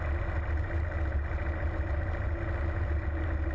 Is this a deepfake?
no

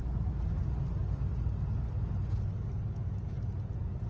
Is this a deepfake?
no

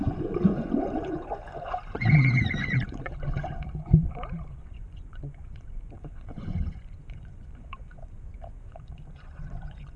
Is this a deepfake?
yes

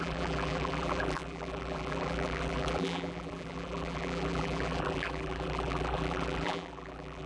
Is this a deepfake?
yes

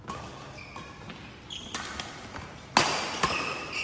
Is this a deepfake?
no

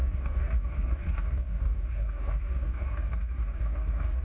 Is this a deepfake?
yes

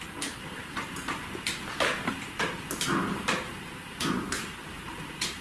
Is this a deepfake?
yes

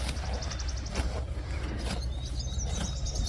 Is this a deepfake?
no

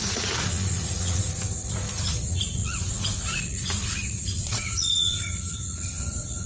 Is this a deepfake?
yes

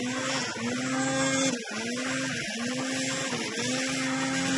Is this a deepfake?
no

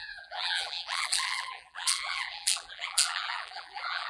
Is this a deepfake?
yes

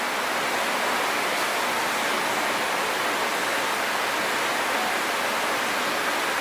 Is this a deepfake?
no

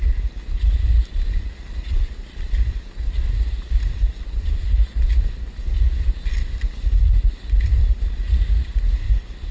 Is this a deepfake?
no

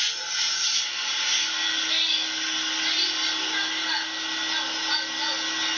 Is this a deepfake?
no